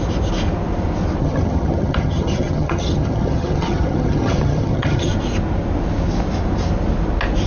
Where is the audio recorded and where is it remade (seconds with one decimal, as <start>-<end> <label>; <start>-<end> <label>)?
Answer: 0.0-1.2 recorded; 1.2-5.1 remade; 5.1-7.5 recorded